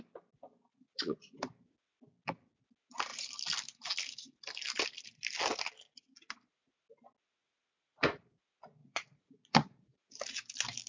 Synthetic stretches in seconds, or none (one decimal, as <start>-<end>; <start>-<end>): 0.7-1.4; 8.8-10.1